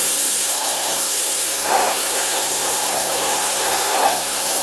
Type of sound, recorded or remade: remade